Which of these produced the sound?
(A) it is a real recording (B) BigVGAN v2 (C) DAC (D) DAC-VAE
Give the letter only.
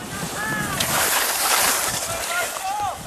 B